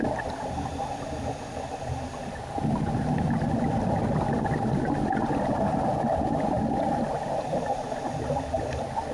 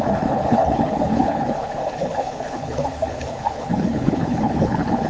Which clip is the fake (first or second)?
second